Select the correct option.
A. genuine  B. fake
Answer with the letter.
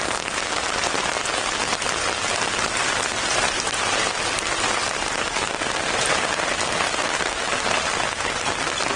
A